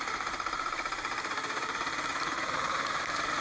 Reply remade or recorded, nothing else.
remade